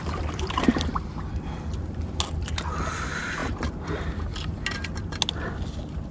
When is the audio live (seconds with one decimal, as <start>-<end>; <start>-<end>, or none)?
0.0-6.1